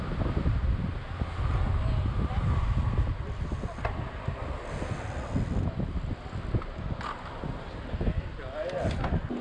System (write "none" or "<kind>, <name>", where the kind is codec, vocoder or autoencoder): none